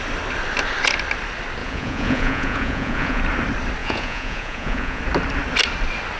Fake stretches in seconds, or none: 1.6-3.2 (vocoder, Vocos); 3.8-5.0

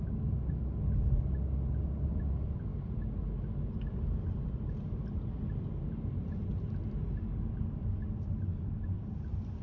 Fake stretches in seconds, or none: 8.5-9.0 (vocoder, Vocos)

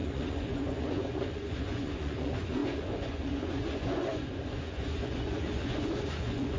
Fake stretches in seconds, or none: 0.0-6.6 (vocoder, Vocos)

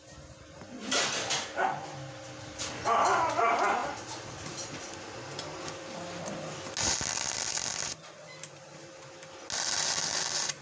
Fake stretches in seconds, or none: none